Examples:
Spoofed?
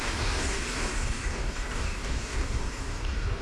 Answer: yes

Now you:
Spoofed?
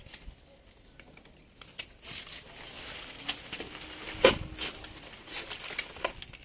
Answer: no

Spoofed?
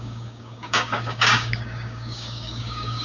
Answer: yes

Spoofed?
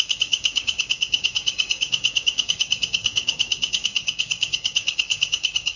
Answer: yes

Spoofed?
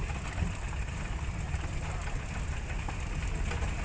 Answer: no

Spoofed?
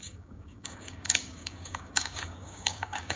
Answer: yes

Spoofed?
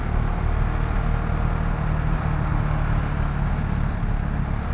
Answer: no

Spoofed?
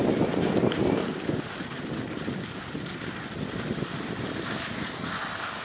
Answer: no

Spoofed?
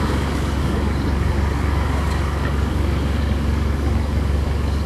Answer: yes